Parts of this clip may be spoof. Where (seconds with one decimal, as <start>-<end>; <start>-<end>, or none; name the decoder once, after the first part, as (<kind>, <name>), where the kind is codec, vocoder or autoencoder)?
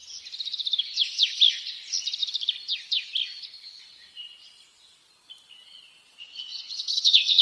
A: 6.2-7.4 (vocoder, WaveNeXt)